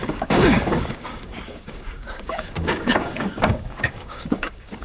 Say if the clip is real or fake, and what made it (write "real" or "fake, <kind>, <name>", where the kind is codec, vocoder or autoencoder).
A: fake, codec, DAC